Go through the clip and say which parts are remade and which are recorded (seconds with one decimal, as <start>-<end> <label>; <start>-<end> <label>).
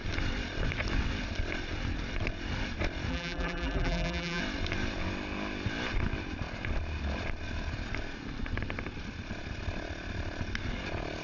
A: 0.0-3.1 recorded; 3.1-4.4 remade; 4.4-11.2 recorded